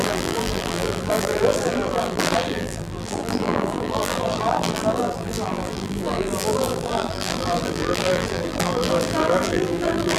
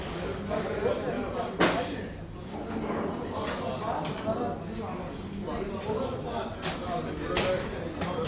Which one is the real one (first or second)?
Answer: second